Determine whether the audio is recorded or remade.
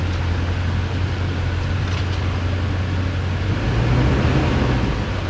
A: recorded